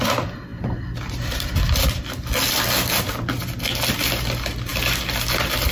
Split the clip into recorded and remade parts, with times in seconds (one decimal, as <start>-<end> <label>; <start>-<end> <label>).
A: 0.0-5.7 recorded